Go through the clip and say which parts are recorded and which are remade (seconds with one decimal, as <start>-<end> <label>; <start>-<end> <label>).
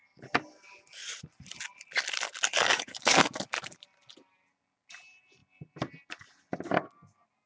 0.0-2.5 recorded; 2.5-3.4 remade; 3.4-7.5 recorded